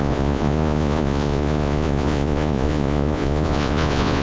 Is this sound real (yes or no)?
no